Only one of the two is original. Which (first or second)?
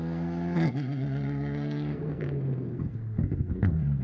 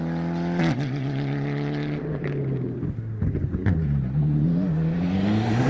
second